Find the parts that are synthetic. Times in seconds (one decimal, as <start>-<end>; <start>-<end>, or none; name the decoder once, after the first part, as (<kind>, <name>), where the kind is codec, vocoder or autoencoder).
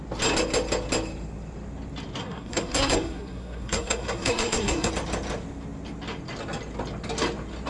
2.2-4.9 (codec, SNAC)